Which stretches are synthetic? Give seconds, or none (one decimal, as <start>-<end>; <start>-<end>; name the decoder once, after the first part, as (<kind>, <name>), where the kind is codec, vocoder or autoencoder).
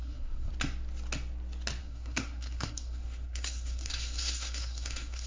0.0-0.5 (codec, SNAC); 1.8-5.3